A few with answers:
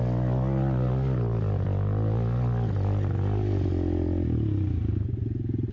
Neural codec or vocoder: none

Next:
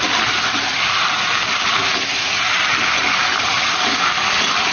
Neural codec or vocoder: none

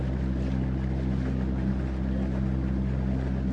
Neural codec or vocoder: none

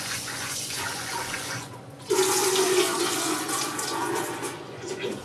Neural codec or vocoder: vocoder, Vocos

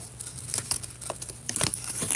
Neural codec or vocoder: none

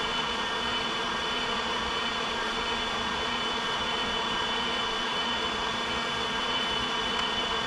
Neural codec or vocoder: vocoder, Vocos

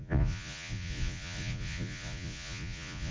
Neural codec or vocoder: vocoder, Vocos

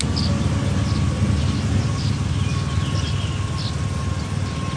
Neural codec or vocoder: none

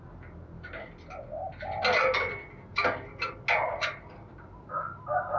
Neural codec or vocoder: none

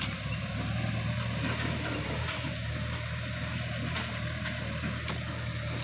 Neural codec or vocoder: none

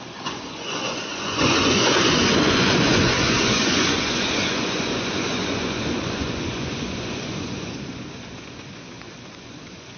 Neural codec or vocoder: vocoder, Vocos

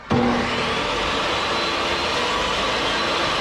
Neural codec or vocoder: none